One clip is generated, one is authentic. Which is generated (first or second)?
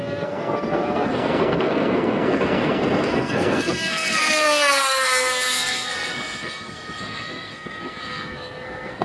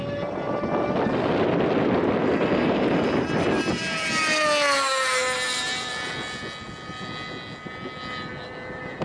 first